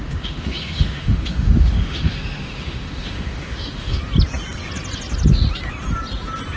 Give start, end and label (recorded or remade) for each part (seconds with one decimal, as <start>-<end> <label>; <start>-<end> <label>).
0.0-4.0 remade; 4.0-6.6 recorded